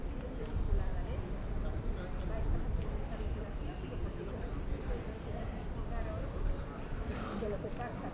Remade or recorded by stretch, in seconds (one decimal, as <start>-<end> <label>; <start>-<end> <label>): 0.0-7.1 recorded; 7.1-8.1 remade